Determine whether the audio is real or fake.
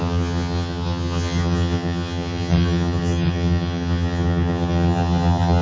fake